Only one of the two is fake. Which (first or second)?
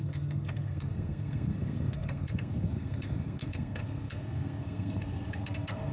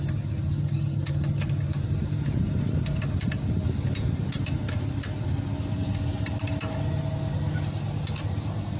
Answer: first